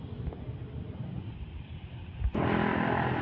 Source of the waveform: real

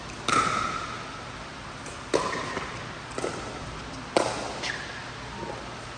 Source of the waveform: real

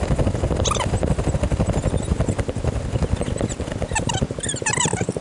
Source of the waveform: real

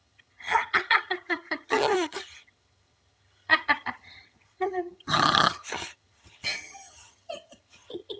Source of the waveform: fake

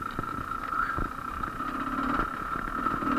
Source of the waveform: real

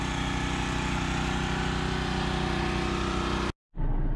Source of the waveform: real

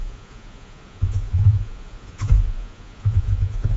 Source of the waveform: fake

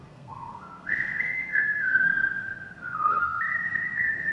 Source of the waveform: fake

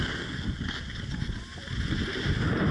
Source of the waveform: real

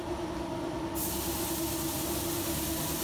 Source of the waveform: real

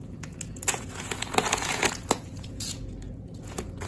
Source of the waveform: fake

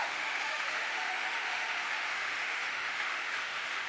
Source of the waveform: fake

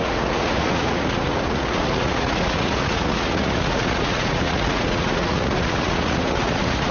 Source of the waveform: fake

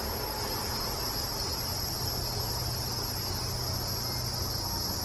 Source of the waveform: real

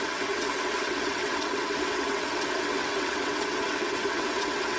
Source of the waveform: fake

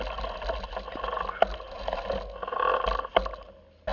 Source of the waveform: real